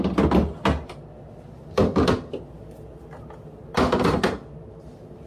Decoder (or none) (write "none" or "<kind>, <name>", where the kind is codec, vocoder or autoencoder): none